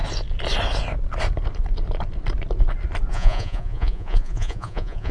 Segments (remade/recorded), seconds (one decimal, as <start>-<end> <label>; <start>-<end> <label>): 0.0-3.1 recorded; 3.1-5.1 remade